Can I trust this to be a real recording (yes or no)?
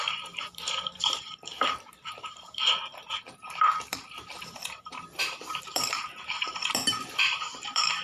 no